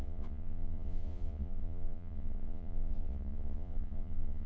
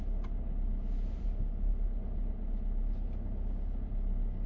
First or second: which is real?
second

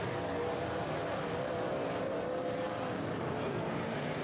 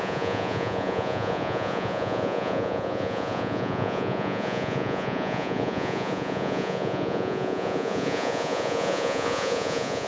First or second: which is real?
first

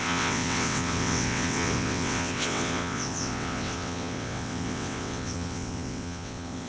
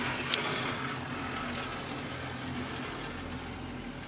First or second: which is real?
second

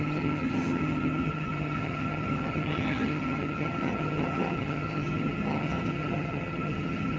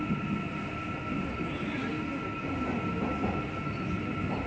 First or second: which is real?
second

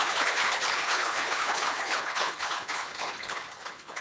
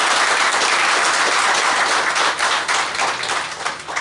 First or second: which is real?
second